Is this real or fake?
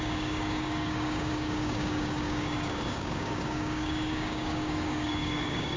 fake